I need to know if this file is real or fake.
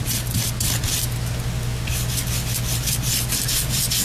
real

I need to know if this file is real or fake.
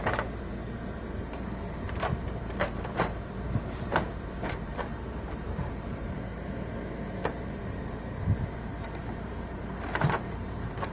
fake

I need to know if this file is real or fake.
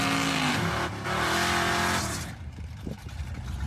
real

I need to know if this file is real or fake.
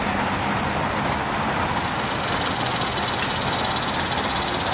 real